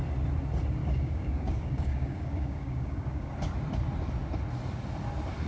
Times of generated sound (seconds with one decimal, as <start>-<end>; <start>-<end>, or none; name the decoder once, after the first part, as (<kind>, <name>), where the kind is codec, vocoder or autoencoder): 0.8-3.3 (codec, DAC)